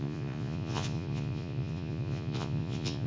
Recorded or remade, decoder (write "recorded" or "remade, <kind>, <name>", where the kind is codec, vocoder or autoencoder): remade, vocoder, Vocos